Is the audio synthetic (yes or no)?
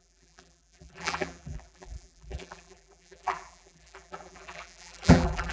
yes